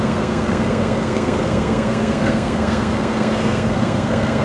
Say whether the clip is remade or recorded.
remade